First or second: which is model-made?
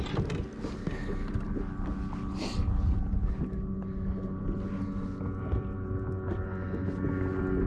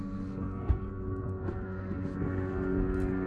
second